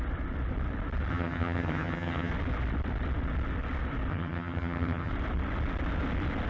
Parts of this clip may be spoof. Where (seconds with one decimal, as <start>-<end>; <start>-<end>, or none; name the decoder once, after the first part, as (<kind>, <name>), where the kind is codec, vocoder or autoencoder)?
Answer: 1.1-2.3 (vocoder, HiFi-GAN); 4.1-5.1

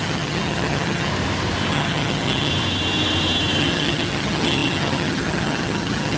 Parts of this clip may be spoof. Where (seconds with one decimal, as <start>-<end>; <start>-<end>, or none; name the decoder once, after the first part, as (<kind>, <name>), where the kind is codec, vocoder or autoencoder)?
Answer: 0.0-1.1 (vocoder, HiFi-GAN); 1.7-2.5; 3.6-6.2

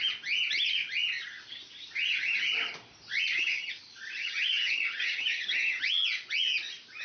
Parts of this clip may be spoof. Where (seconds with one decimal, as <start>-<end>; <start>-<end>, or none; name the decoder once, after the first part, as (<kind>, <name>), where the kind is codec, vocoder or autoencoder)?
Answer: 3.3-3.8 (vocoder, HiFi-GAN); 4.2-5.8

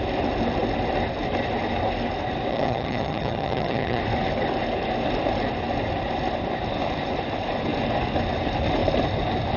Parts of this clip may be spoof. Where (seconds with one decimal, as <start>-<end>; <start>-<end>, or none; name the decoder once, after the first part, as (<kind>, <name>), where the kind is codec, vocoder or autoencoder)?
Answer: 2.5-4.0 (vocoder, HiFi-GAN)

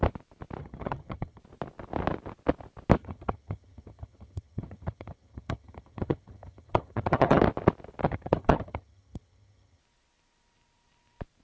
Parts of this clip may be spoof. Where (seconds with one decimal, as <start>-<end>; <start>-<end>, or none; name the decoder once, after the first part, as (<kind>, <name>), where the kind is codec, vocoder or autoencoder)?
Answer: 0.6-1.4 (vocoder, HiFi-GAN); 3.0-7.4; 8.0-9.8

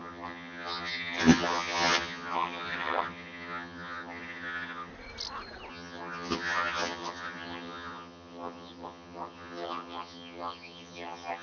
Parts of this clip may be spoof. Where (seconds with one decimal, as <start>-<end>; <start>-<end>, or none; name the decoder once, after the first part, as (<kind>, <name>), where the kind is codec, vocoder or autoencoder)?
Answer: 0.0-4.9 (vocoder, HiFi-GAN); 5.7-11.4